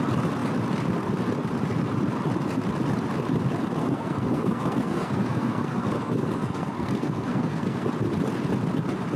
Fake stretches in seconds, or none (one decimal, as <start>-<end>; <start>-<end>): 3.8-7.9